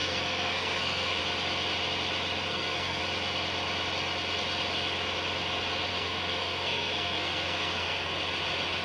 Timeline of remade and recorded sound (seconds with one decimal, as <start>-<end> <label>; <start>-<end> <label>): 0.0-1.2 remade; 1.2-2.5 recorded; 2.5-3.0 remade; 3.0-5.9 recorded; 5.9-8.1 remade; 8.1-8.8 recorded